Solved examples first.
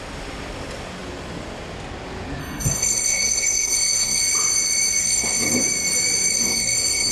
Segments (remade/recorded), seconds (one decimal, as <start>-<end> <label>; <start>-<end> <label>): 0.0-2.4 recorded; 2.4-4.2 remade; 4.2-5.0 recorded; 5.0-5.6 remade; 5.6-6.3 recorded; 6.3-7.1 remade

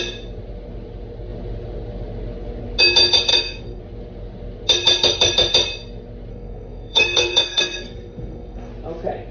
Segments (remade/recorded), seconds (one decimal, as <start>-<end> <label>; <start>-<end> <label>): 0.0-3.3 recorded; 3.3-3.8 remade; 3.8-6.3 recorded; 6.3-8.7 remade; 8.7-9.3 recorded

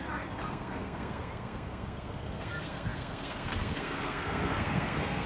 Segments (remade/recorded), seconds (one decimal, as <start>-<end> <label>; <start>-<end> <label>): 0.0-5.3 remade